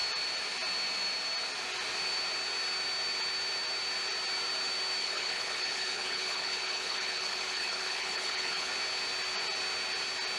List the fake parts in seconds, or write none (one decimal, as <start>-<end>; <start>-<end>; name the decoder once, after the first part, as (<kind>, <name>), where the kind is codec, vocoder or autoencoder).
5.0-8.7 (codec, HILCodec)